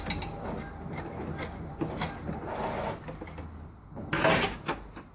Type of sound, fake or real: real